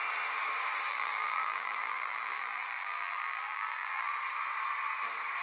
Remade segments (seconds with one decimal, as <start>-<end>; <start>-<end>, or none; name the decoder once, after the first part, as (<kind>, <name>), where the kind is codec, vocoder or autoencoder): 0.9-4.1 (vocoder, BigVGAN v2)